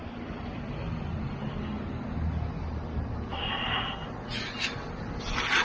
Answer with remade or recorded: recorded